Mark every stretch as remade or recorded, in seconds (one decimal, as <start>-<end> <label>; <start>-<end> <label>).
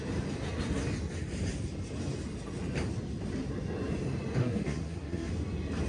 0.0-4.4 recorded; 4.4-5.3 remade; 5.3-5.9 recorded